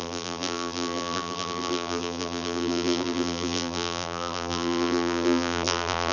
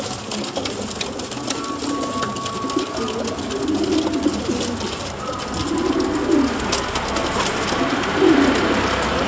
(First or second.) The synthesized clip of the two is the first